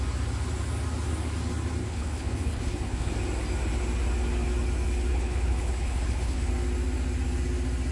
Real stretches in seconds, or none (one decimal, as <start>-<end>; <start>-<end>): 0.0-1.8; 3.1-5.1; 6.5-7.9